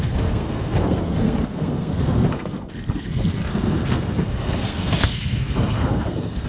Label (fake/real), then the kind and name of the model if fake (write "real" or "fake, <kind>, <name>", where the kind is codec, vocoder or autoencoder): fake, codec, SNAC